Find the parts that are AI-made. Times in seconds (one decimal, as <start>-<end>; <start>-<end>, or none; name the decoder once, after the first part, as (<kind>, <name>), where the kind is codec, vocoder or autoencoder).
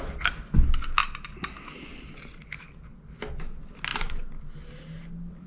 none